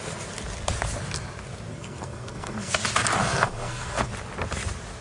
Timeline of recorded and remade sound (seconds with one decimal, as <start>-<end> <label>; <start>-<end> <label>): 0.0-1.7 recorded; 1.7-2.7 remade; 2.7-3.2 recorded; 3.2-4.1 remade; 4.1-5.0 recorded